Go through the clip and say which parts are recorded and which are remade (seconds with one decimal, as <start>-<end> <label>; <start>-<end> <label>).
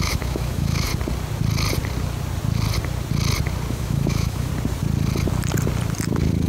0.0-0.9 remade; 0.9-3.7 recorded; 3.7-4.5 remade; 4.5-6.5 recorded